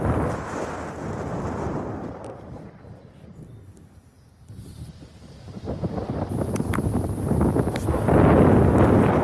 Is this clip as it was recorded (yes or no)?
yes